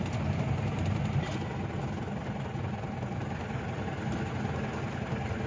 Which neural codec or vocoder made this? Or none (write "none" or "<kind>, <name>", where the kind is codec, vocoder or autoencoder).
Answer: none